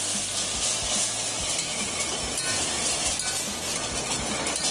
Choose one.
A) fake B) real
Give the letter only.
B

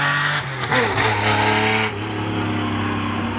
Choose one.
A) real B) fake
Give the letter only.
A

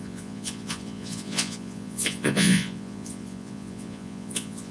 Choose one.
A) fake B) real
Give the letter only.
A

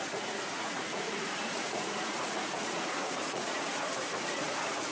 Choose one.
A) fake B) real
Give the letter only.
A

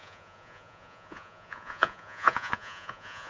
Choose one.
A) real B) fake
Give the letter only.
B